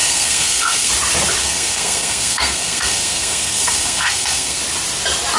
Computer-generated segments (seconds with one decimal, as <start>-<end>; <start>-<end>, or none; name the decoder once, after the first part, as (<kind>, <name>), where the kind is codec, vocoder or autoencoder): 0.0-0.9 (codec, SNAC); 1.4-4.6